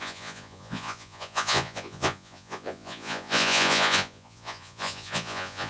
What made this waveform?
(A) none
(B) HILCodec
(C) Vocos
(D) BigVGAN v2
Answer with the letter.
C